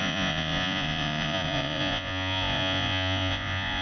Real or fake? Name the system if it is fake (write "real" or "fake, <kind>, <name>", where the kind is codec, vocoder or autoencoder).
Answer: fake, vocoder, Vocos